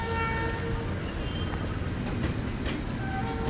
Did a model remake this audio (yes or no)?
no